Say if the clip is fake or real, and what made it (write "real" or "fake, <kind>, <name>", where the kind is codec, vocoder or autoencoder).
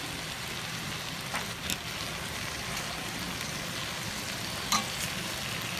real